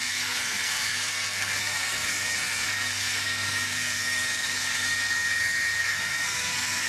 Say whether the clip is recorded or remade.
remade